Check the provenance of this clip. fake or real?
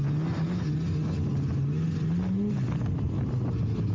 real